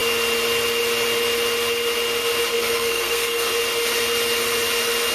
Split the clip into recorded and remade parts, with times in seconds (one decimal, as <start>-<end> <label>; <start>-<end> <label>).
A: 0.0-2.5 recorded; 2.5-3.5 remade; 3.5-5.1 recorded